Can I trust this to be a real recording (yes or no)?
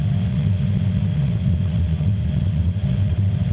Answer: no